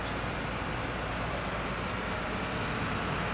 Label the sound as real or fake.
real